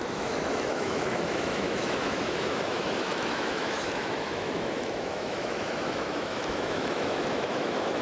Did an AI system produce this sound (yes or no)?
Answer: yes